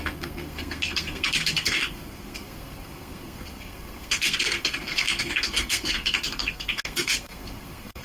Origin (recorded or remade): remade